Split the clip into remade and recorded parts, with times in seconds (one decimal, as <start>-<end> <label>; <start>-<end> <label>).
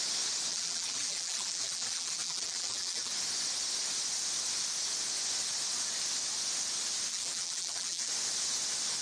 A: 0.0-0.5 recorded; 0.5-3.1 remade; 3.1-7.1 recorded; 7.1-8.1 remade; 8.1-9.0 recorded